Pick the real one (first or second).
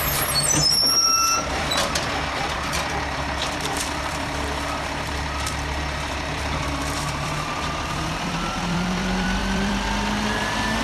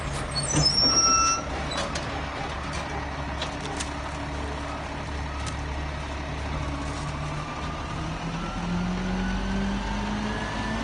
second